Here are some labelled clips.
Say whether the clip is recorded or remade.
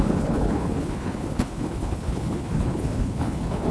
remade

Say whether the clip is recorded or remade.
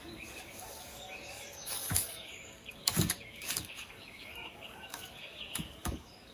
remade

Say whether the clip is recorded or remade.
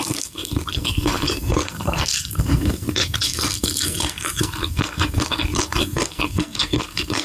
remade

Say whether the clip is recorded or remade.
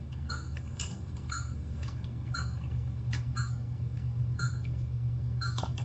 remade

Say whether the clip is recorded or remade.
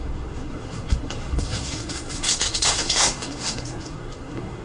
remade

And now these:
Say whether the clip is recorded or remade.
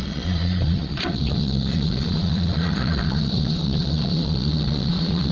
remade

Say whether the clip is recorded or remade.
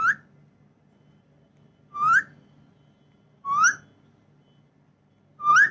recorded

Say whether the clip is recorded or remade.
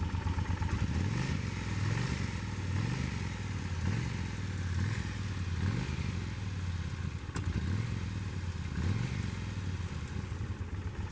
recorded